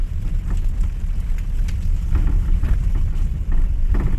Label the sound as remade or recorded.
remade